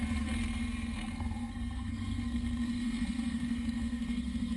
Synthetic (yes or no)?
yes